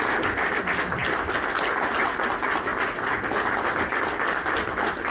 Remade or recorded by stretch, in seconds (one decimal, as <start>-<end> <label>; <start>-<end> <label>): 0.0-5.1 recorded